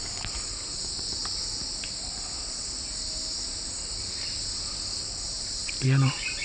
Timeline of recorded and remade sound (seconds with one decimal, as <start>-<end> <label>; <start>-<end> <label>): 0.0-1.2 remade; 1.2-5.0 recorded; 5.0-5.6 remade; 5.6-6.4 recorded